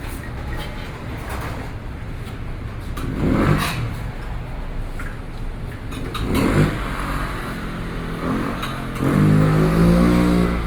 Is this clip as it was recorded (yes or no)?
yes